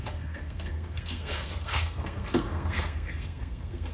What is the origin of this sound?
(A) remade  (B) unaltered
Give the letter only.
A